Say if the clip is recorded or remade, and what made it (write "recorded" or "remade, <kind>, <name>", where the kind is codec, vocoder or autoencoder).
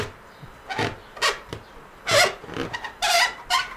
recorded